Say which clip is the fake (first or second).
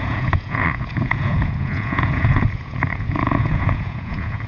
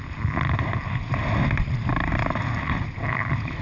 first